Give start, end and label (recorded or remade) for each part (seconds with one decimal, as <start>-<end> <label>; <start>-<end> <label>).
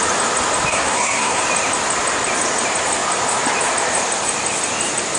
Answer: 0.0-0.7 recorded; 0.7-1.4 remade; 1.4-5.2 recorded